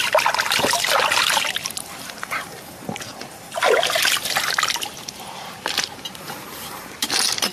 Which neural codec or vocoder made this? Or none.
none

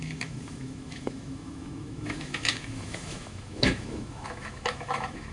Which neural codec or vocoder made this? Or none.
autoencoder, DAC-VAE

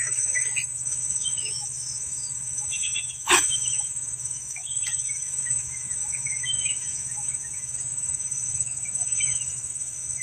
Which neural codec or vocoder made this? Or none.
autoencoder, DAC-VAE